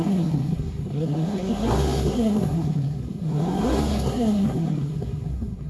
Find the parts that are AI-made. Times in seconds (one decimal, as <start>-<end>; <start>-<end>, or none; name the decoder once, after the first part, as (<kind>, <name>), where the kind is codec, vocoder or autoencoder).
0.0-5.7 (codec, SNAC)